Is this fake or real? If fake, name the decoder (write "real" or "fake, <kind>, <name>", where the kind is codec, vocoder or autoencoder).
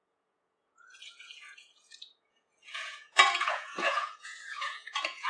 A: fake, vocoder, Vocos